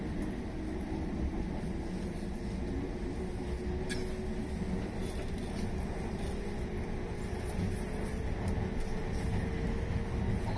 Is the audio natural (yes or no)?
yes